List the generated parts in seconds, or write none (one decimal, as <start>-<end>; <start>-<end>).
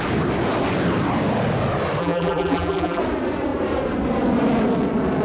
2.0-3.0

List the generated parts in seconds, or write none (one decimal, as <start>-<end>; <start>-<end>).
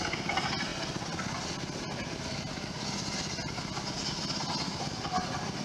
none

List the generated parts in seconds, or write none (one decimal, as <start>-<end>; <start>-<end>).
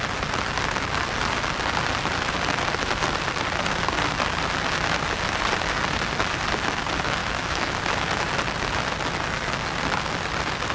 7.2-7.8